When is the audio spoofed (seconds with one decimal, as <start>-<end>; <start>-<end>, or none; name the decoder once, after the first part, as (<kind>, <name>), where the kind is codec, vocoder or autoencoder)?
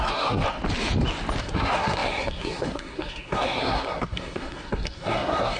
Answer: 0.0-0.4 (codec, SNAC); 1.4-5.6